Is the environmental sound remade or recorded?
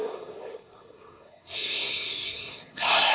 remade